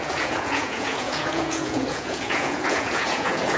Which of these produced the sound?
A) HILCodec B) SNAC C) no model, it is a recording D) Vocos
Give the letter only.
D